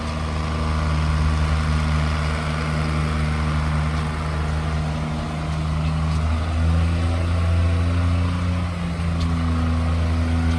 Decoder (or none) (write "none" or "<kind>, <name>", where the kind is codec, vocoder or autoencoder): none